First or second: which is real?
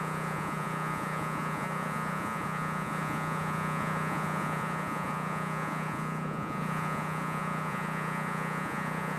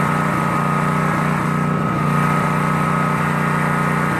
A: second